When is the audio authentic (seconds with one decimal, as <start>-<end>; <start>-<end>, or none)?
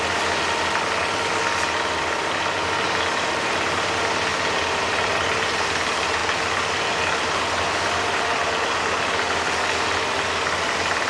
0.0-11.1